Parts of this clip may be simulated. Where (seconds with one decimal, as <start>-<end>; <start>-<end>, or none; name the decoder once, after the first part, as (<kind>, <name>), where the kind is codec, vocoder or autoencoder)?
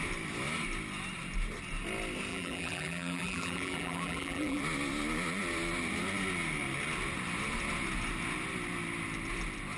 2.3-4.6 (vocoder, BigVGAN v2)